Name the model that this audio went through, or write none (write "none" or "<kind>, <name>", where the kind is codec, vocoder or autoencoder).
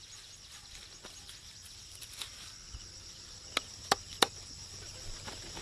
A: none